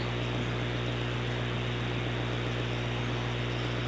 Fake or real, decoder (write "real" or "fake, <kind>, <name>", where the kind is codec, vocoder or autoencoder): real